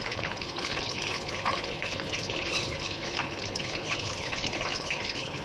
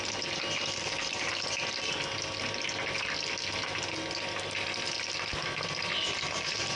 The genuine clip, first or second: second